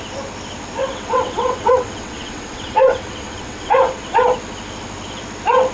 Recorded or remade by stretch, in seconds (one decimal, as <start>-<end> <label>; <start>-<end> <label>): 0.0-0.8 recorded; 0.8-4.2 remade; 4.2-5.7 recorded